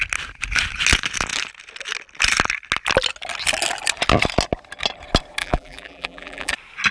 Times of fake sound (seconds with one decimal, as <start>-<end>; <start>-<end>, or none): 5.4-6.5

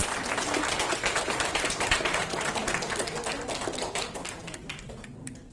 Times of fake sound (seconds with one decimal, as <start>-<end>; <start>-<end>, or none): 1.2-2.6; 4.6-5.5